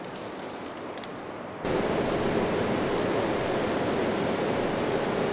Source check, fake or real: real